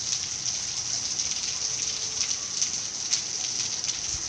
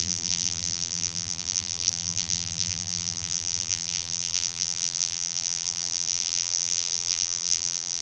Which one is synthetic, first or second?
second